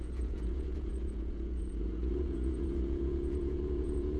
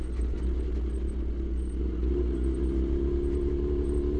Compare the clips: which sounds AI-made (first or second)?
first